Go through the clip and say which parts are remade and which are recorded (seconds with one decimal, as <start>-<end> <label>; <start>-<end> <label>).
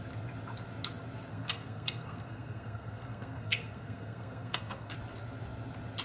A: 0.0-1.3 recorded; 1.3-4.9 remade; 4.9-6.0 recorded